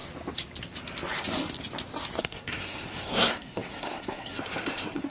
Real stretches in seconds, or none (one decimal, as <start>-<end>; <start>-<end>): 0.0-2.2